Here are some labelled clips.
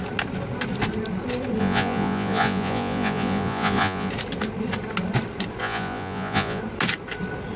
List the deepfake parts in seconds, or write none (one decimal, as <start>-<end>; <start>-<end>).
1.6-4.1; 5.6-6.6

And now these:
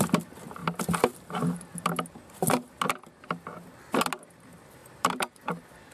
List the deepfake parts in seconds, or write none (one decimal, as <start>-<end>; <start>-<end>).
4.8-5.5

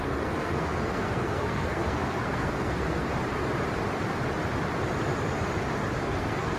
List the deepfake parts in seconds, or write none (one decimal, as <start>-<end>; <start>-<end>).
0.0-3.1; 6.0-6.6

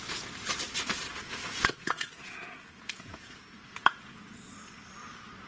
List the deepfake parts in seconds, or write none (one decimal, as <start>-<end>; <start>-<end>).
1.1-4.4

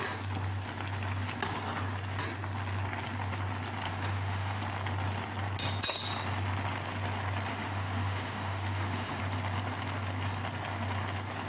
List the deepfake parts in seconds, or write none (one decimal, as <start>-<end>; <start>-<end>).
3.9-4.6; 7.5-9.2

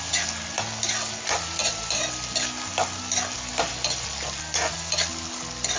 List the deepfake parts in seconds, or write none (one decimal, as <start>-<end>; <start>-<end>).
none